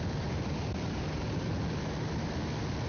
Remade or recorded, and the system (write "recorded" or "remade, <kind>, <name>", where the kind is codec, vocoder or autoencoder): recorded